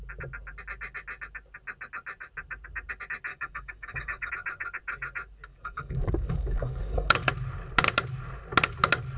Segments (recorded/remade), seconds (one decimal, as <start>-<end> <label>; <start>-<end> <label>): 0.0-3.3 recorded; 3.3-4.3 remade; 4.3-5.5 recorded; 5.5-7.3 remade; 7.3-9.2 recorded